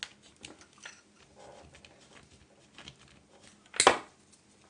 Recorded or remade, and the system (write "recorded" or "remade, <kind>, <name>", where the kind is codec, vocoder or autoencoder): recorded